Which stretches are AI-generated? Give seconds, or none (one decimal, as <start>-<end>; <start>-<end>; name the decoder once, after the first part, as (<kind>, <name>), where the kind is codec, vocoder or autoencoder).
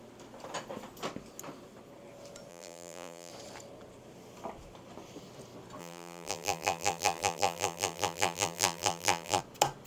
2.5-3.3 (vocoder, BigVGAN v2); 5.8-9.4